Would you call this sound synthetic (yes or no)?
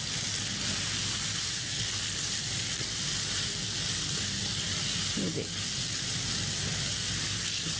no